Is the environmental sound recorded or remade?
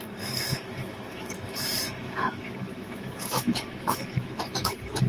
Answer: remade